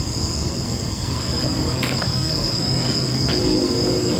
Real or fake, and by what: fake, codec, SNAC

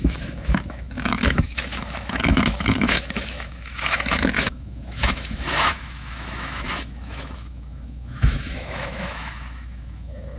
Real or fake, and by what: fake, autoencoder, DAC-VAE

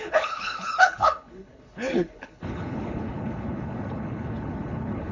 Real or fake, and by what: fake, codec, HILCodec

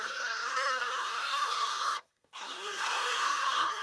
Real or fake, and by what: fake, codec, SNAC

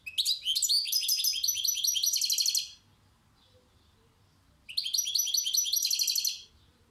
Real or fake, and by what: real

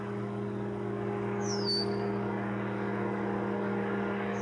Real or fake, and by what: fake, codec, DAC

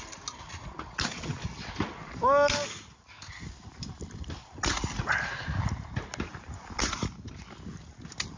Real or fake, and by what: real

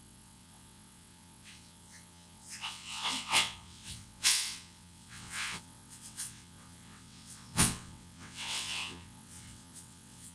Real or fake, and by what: fake, vocoder, WaveNeXt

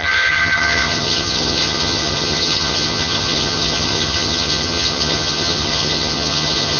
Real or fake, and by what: fake, vocoder, HiFi-GAN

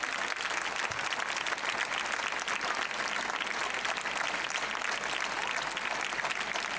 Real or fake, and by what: real